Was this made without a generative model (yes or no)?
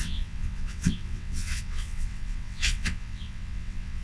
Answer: no